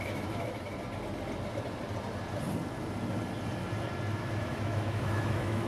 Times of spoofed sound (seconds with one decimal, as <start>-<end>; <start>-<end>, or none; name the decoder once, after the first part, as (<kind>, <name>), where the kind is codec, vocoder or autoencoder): 0.0-0.7 (autoencoder, DAC-VAE); 4.1-5.7